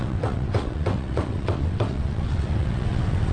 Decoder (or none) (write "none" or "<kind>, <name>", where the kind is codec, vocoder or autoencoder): vocoder, WaveNeXt